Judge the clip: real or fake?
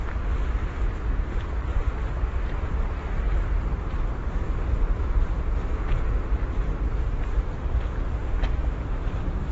real